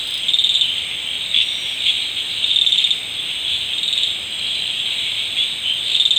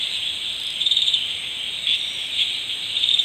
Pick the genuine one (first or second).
first